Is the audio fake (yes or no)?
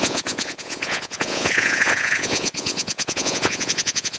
yes